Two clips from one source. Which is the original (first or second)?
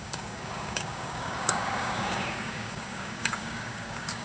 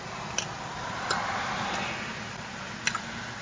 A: second